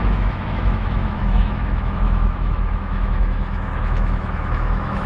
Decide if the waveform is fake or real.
fake